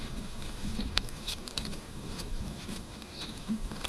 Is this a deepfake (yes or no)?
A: yes